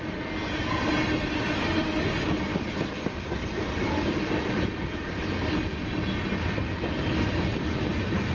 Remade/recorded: recorded